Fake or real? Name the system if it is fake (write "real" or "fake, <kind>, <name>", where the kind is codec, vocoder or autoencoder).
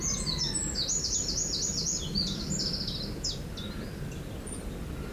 real